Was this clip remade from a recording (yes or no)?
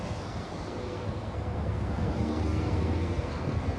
yes